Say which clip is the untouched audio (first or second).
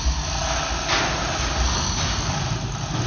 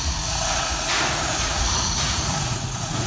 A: first